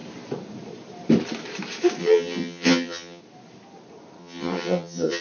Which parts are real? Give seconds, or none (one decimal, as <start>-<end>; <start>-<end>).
0.0-2.0; 3.2-4.2